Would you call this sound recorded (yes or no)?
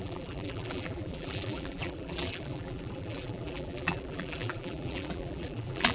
no